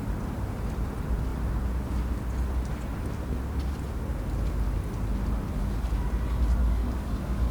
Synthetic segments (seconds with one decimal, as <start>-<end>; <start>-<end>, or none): 6.6-7.5